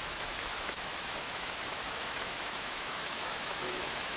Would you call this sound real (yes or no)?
no